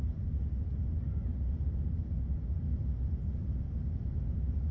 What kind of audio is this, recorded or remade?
recorded